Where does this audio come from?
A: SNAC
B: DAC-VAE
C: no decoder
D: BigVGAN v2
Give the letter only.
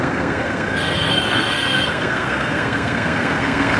A